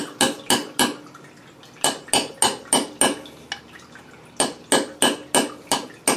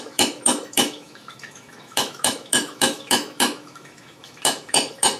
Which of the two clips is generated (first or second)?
second